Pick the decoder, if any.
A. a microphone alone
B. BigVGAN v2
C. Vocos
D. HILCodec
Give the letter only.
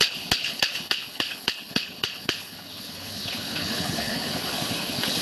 D